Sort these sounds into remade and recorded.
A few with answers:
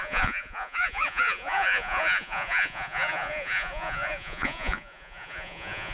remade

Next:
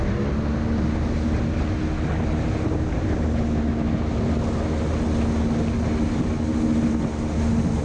recorded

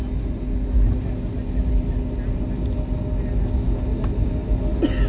recorded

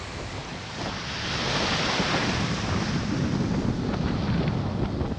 recorded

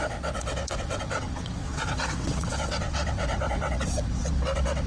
remade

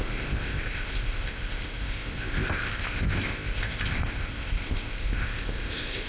remade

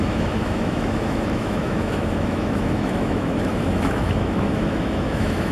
remade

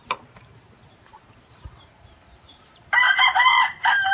remade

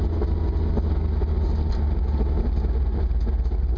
recorded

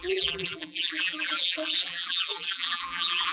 remade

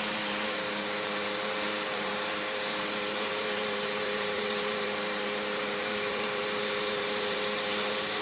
remade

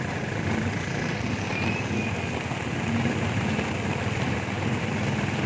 recorded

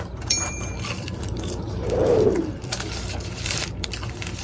remade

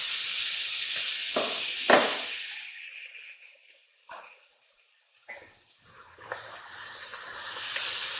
recorded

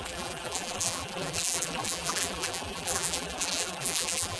remade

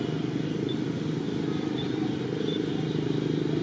recorded